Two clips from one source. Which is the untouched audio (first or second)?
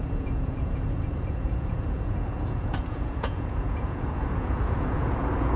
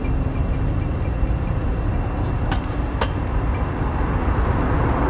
second